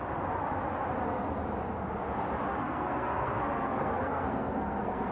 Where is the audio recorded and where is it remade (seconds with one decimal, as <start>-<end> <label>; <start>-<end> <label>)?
0.0-2.5 recorded; 2.5-5.1 remade